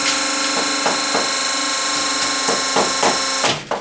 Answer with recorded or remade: recorded